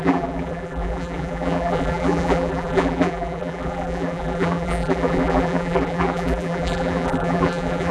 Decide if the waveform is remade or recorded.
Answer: remade